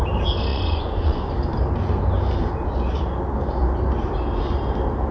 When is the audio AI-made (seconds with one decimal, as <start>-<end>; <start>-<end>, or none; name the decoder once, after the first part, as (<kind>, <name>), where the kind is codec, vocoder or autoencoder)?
0.5-1.3 (vocoder, Vocos)